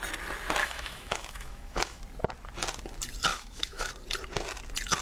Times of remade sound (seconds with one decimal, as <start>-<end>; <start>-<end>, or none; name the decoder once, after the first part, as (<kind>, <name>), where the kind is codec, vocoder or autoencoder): 0.6-2.0 (autoencoder, DAC-VAE); 3.3-3.9